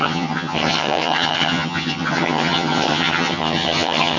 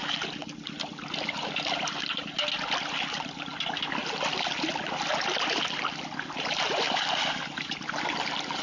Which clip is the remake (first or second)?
first